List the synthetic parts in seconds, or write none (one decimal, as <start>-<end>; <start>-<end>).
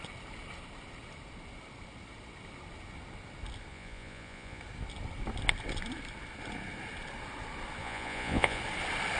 3.7-4.6; 7.8-8.6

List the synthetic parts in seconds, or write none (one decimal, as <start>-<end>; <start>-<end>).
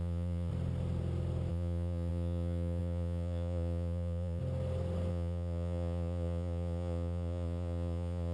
0.0-0.5; 1.5-4.4; 5.1-8.3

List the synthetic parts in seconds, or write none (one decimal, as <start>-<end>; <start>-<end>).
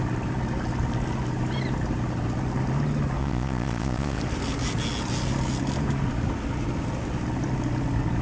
3.2-4.2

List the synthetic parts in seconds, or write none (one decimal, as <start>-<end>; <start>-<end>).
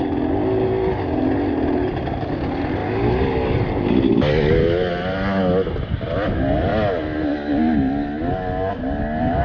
none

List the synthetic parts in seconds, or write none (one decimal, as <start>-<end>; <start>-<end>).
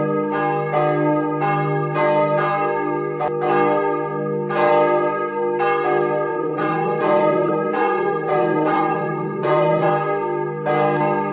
6.3-9.9